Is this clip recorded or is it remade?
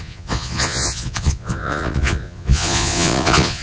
remade